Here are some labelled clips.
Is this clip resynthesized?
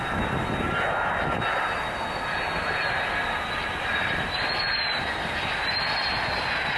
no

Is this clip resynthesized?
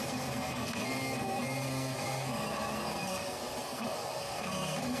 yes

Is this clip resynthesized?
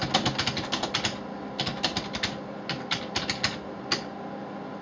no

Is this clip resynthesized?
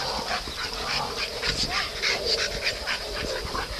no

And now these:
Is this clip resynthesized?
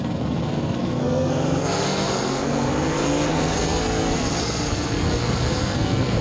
yes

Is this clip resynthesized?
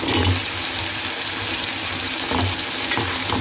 no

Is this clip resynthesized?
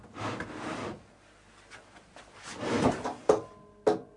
no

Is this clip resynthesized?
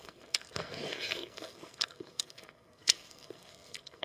yes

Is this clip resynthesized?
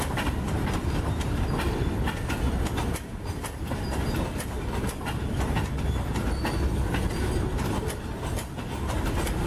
no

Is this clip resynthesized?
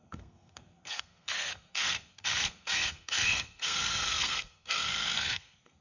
yes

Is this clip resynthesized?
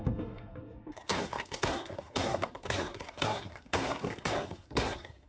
yes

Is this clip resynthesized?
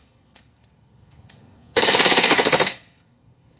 yes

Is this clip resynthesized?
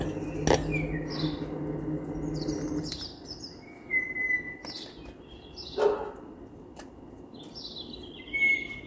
no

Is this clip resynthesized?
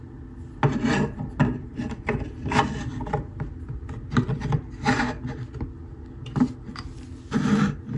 no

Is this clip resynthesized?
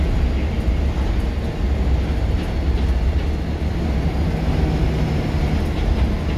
no